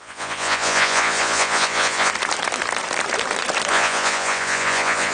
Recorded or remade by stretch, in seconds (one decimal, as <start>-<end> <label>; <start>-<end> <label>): 0.0-2.1 remade; 2.1-3.7 recorded; 3.7-5.1 remade

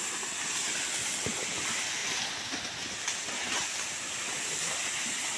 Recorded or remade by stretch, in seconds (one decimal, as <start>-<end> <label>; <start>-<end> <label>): 0.0-5.4 recorded